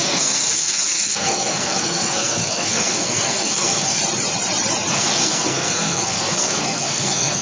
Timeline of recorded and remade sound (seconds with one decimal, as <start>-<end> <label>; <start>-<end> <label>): 0.0-4.0 remade; 4.0-4.9 recorded; 4.9-7.4 remade